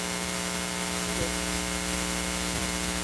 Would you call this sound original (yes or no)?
yes